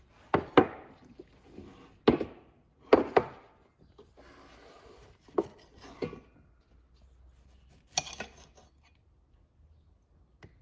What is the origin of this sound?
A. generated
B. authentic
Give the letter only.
B